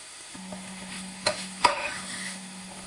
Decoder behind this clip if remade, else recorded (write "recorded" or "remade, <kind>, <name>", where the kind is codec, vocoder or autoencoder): remade, autoencoder, DAC-VAE